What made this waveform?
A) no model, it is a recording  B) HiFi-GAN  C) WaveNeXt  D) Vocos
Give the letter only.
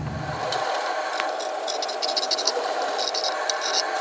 A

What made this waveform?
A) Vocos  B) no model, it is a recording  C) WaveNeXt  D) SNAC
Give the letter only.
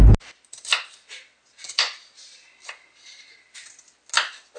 B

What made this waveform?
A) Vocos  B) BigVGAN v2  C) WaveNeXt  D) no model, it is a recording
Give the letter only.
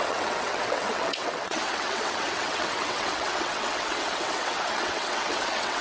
C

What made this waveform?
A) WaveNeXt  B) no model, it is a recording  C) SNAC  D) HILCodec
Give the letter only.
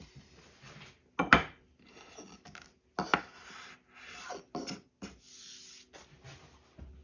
B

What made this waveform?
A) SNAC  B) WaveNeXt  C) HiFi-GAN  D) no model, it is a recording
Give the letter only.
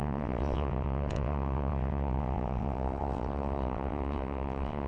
B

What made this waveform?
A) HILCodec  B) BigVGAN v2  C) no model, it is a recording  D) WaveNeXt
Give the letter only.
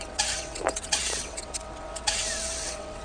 D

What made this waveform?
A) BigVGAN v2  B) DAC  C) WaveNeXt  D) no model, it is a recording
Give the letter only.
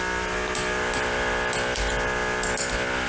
D